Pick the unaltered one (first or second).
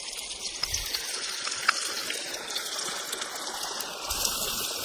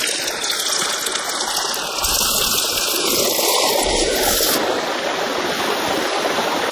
second